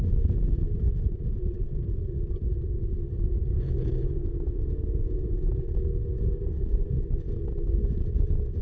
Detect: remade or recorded recorded